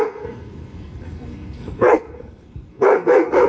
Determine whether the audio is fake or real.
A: fake